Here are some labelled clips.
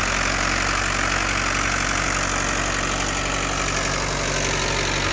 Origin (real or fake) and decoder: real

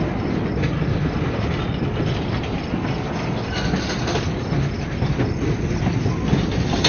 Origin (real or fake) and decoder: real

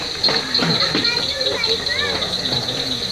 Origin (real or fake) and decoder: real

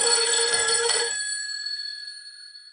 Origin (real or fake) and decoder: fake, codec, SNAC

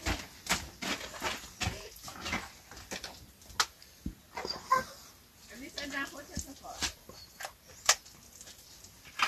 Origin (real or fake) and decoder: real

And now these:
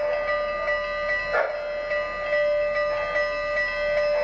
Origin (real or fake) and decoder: real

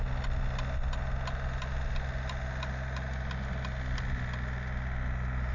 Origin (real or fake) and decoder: real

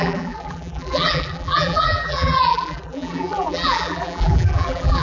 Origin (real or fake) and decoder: fake, vocoder, BigVGAN v2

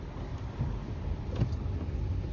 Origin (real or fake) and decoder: real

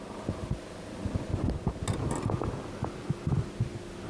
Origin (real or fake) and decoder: real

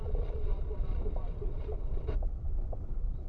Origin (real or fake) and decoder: fake, vocoder, WaveNeXt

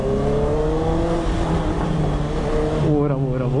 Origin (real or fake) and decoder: real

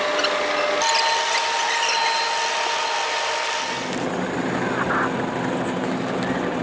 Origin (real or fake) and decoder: real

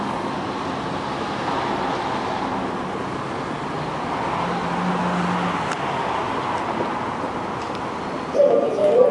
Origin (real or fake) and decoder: real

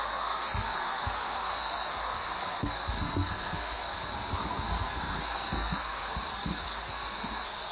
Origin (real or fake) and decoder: fake, codec, SNAC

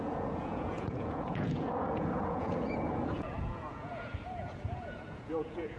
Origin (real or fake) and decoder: fake, vocoder, Vocos